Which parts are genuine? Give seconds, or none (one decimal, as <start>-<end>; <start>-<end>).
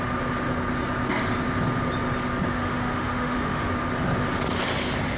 0.0-2.5; 3.7-5.2